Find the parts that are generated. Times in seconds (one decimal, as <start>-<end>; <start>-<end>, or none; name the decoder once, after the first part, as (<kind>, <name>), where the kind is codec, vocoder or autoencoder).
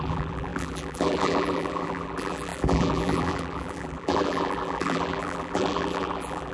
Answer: 0.0-6.5 (vocoder, BigVGAN v2)